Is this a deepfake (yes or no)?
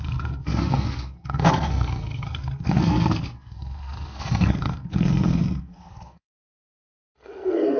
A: yes